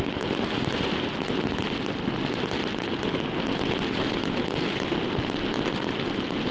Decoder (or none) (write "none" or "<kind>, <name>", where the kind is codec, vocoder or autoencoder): none